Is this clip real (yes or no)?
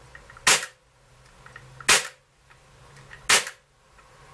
yes